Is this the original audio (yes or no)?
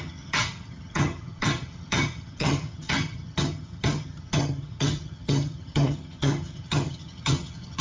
no